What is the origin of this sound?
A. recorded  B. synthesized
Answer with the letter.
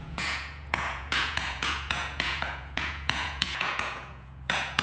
B